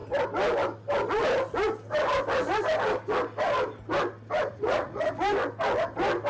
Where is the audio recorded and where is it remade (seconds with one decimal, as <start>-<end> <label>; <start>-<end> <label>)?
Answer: 0.0-4.5 recorded; 4.5-5.1 remade; 5.1-6.3 recorded